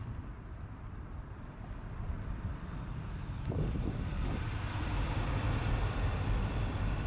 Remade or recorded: remade